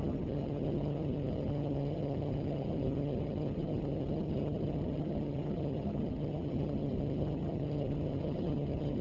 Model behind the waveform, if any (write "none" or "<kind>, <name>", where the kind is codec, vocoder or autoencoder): vocoder, HiFi-GAN